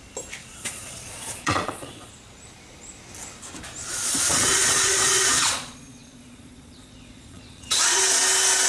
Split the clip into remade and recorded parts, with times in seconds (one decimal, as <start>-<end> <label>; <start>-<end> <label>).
0.0-0.4 recorded; 0.4-2.1 remade; 2.1-3.9 recorded; 3.9-8.0 remade; 8.0-8.7 recorded